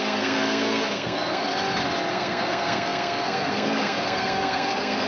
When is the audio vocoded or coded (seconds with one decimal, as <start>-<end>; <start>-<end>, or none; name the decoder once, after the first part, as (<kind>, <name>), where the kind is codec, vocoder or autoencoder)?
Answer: 0.0-1.5 (codec, SNAC); 2.1-5.1